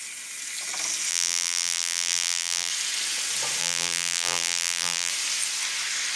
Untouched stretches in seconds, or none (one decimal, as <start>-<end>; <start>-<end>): 0.0-1.1; 2.7-3.6; 5.1-6.2